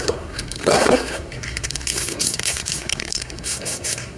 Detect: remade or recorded remade